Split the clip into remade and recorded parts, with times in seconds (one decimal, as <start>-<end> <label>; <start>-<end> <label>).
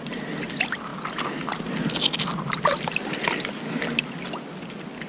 0.0-5.1 recorded